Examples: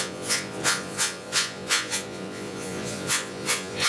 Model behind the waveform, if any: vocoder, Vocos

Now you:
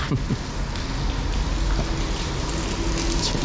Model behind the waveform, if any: none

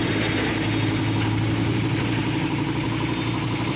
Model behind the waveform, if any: none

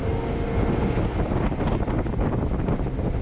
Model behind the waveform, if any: none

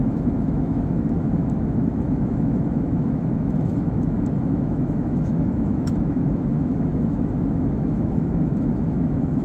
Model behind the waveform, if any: autoencoder, DAC-VAE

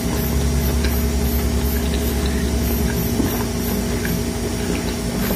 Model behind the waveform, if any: none